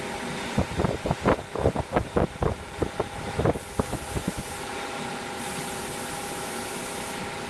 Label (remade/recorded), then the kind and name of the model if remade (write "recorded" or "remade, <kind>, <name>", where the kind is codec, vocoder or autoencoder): recorded